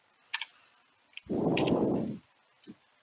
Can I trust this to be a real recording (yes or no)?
yes